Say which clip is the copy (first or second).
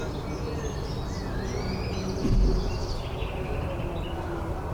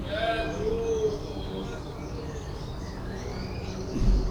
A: second